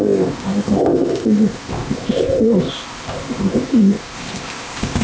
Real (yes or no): no